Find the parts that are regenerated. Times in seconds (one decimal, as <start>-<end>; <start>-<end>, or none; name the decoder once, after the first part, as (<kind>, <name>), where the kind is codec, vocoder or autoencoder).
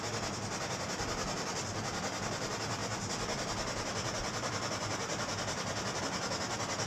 none